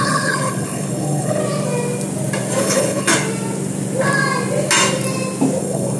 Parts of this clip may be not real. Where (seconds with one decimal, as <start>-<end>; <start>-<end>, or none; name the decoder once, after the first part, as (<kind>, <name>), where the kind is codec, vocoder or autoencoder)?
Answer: 0.0-1.4 (codec, HILCodec); 2.6-3.1; 5.6-6.0